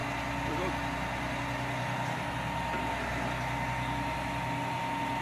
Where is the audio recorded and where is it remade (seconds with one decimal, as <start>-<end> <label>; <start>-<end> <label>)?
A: 0.0-5.2 recorded